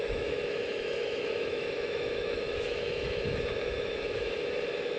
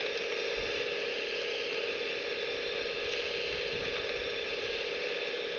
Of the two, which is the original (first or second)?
second